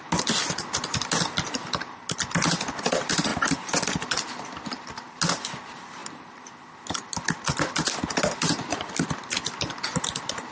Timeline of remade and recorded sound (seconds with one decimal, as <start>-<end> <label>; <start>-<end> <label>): 0.0-10.5 recorded

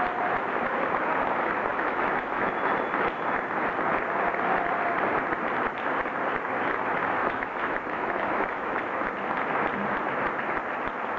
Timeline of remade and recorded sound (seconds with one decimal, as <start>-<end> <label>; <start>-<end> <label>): 0.0-1.7 recorded; 1.7-2.5 remade; 2.5-7.2 recorded; 7.2-8.8 remade; 8.8-11.2 recorded

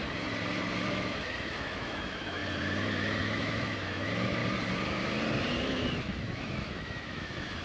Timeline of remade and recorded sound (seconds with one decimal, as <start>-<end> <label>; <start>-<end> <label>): 0.0-0.9 recorded; 0.9-2.4 remade; 2.4-3.2 recorded; 3.2-4.4 remade; 4.4-5.6 recorded; 5.6-7.6 remade

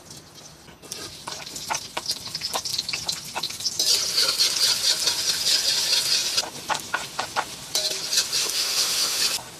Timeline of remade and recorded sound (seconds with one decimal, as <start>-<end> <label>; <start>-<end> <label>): 0.0-8.4 recorded; 8.4-9.2 remade; 9.2-9.6 recorded

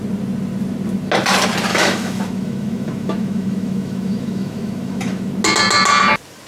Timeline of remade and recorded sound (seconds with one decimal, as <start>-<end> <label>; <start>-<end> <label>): 0.0-1.7 recorded; 1.7-5.3 remade; 5.3-6.5 recorded

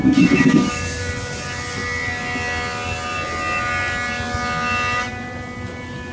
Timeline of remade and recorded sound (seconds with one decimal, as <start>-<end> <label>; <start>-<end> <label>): 0.0-0.7 remade; 0.7-6.1 recorded

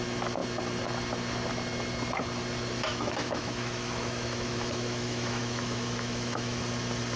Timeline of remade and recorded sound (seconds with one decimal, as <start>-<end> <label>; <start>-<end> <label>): 0.0-2.9 recorded; 2.9-6.6 remade; 6.6-7.2 recorded